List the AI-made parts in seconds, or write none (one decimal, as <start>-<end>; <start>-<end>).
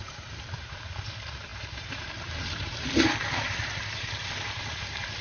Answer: 0.0-5.2